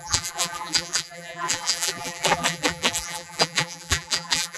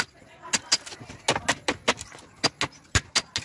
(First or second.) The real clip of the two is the second